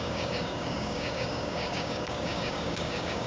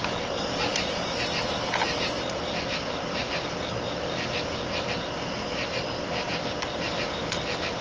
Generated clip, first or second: first